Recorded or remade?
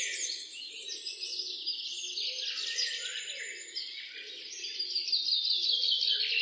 remade